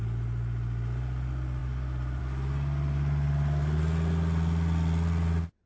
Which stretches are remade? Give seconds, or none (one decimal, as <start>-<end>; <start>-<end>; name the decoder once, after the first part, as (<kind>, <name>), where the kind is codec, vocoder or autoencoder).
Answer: none